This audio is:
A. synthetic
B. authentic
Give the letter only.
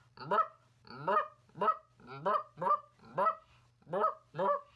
B